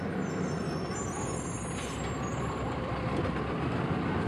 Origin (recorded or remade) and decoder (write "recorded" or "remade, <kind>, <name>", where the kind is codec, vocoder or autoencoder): recorded